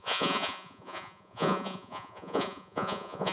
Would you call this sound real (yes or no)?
no